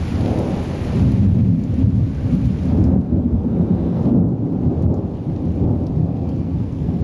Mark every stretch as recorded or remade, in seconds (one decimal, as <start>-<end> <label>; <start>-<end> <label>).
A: 0.0-2.8 recorded; 2.8-4.0 remade; 4.0-6.0 recorded; 6.0-7.0 remade